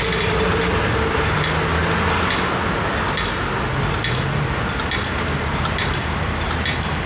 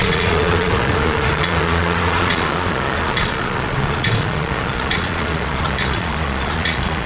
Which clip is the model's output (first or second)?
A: second